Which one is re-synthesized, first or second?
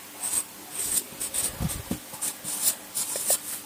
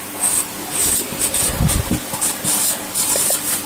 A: second